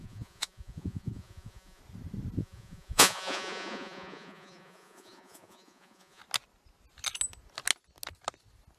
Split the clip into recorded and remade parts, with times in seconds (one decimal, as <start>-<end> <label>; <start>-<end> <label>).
0.0-1.8 remade; 1.8-2.4 recorded; 2.4-6.2 remade; 6.2-8.8 recorded